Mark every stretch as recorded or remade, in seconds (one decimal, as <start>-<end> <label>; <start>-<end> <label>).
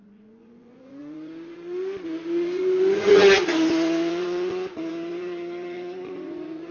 0.0-6.7 remade